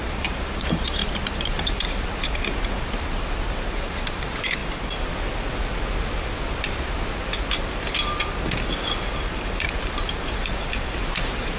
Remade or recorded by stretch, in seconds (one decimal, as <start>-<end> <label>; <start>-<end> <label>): 0.0-4.6 remade; 4.6-9.1 recorded; 9.1-11.6 remade